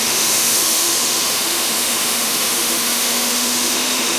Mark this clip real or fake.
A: fake